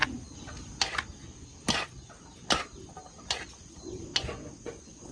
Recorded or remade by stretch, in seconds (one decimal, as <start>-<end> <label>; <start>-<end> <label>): 0.0-4.1 recorded; 4.1-5.1 remade